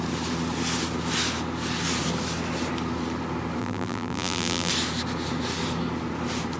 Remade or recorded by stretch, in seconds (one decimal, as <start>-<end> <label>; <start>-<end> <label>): 0.0-3.6 recorded; 3.6-4.7 remade; 4.7-6.6 recorded